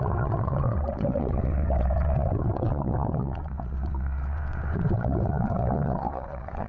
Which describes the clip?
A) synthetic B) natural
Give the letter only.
A